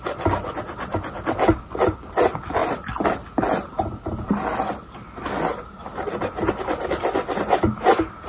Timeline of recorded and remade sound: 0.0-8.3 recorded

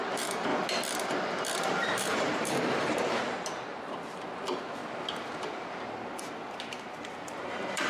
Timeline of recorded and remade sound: 0.0-0.5 remade; 0.5-1.7 recorded; 1.7-4.8 remade; 4.8-7.2 recorded; 7.2-7.9 remade

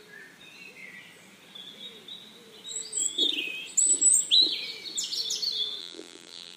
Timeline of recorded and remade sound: 0.0-5.8 recorded; 5.8-6.6 remade